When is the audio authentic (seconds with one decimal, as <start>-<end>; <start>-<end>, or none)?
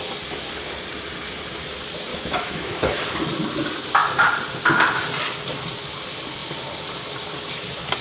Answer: 0.0-2.1; 3.0-8.0